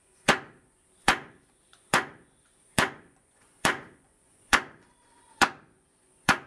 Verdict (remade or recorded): remade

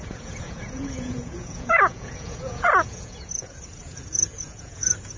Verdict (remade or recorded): remade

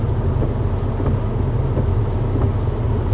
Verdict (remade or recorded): recorded